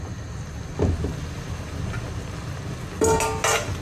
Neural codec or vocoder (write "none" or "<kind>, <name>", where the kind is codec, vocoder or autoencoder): none